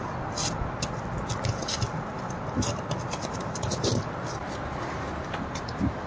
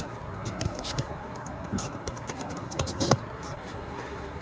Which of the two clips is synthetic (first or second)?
second